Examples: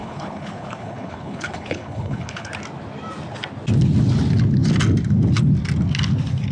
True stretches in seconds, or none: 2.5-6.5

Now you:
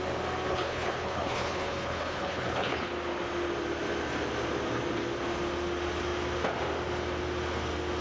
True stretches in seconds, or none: 0.0-0.5; 2.9-8.0

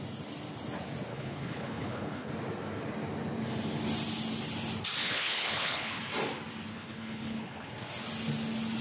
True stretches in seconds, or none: 0.0-1.1; 2.3-5.0; 6.0-6.7; 7.7-8.8

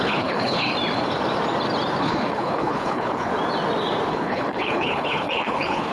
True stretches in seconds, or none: 0.7-2.0; 3.3-4.1